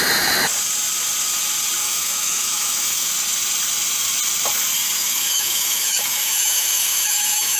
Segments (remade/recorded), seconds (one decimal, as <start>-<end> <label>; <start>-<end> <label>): 0.0-1.8 recorded; 1.8-3.1 remade; 3.1-5.0 recorded; 5.0-7.6 remade